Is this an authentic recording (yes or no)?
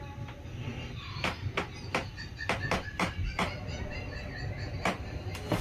yes